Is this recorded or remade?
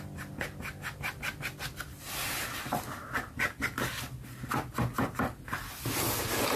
recorded